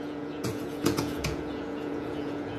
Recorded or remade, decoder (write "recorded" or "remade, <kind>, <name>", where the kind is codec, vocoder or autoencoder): remade, vocoder, Vocos